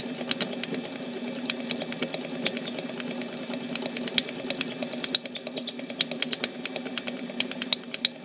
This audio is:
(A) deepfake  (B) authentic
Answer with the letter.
B